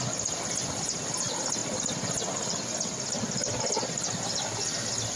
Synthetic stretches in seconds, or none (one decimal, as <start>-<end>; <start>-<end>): none

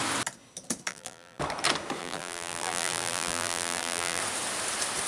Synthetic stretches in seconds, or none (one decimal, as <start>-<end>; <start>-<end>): 0.9-1.4; 2.0-4.2

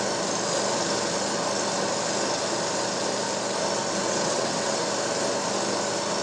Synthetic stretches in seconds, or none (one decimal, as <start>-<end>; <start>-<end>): 4.0-4.8

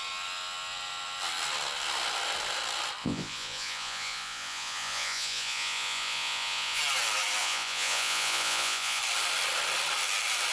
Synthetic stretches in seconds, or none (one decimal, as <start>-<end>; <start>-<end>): 3.0-6.8; 7.4-9.0

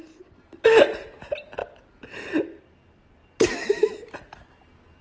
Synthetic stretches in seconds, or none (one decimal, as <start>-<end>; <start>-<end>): 1.6-2.6